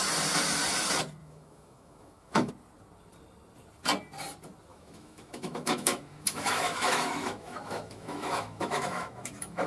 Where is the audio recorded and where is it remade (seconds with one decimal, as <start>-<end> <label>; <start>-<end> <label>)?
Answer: 0.0-1.2 recorded; 1.2-2.5 remade; 2.5-4.7 recorded; 4.7-9.7 remade